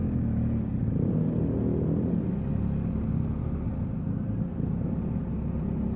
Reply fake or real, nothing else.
real